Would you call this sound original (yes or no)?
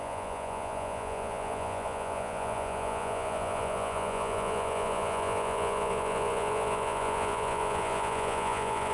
no